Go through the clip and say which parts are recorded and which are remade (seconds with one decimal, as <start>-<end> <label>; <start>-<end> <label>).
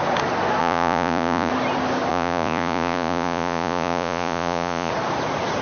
0.0-0.6 recorded; 0.6-1.5 remade; 1.5-2.1 recorded; 2.1-4.9 remade; 4.9-5.6 recorded